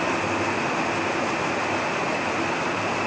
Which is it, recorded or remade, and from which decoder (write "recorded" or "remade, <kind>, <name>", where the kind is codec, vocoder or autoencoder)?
recorded